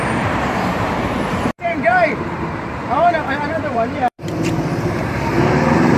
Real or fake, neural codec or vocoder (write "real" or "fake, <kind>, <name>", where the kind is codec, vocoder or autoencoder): fake, vocoder, BigVGAN v2